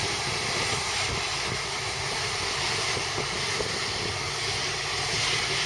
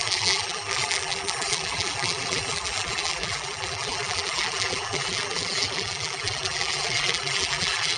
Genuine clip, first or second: first